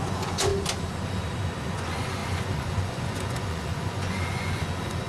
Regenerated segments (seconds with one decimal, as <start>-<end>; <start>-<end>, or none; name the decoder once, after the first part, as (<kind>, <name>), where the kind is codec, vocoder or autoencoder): 0.0-0.5 (vocoder, Vocos); 1.6-5.1